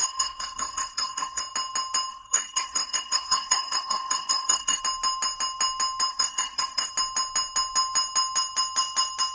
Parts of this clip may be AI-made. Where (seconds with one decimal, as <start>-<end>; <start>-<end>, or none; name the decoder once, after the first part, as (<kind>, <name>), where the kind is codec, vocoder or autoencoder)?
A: 0.0-1.4 (codec, SNAC); 2.1-4.8; 6.1-6.9